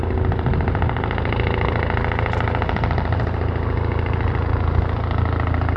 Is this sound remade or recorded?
recorded